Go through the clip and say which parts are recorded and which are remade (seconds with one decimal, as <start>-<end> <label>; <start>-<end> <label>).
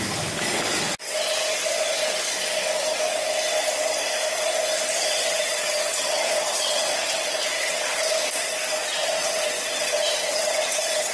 0.0-5.1 recorded; 5.1-8.0 remade; 8.0-8.8 recorded; 8.8-11.1 remade